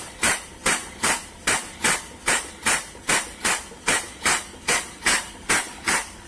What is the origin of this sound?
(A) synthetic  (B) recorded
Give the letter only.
B